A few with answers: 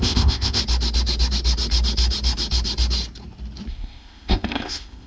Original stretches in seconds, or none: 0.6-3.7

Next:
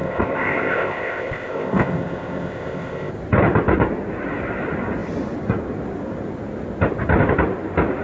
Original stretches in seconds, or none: 3.1-8.0

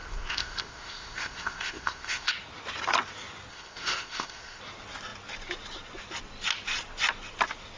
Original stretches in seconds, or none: 2.3-3.5; 4.6-7.8

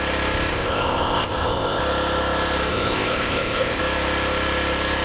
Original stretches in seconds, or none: 0.0-0.5; 1.8-2.7; 3.8-5.0